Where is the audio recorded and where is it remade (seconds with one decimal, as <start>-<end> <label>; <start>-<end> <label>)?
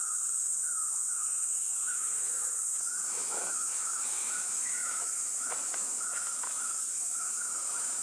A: 0.0-8.0 remade